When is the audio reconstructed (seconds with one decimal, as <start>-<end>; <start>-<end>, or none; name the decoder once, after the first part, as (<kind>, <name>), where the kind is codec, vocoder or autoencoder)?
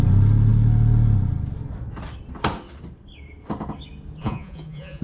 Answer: 4.2-5.0 (vocoder, Vocos)